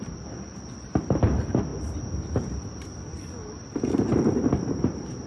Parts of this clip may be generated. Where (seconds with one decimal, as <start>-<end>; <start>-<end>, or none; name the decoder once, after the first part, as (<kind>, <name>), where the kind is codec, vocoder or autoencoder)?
none